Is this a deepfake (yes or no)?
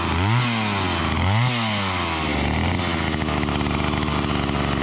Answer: no